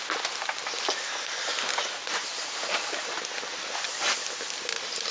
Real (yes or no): yes